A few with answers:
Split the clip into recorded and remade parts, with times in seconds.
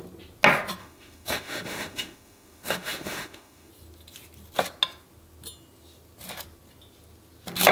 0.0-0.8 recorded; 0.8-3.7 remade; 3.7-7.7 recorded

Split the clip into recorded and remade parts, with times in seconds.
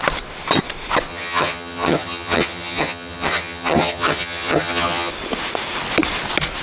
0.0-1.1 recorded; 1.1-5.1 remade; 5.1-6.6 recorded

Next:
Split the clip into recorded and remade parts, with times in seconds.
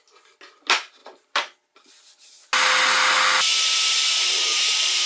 0.0-1.0 recorded; 1.0-1.9 remade; 1.9-3.5 recorded; 3.5-5.1 remade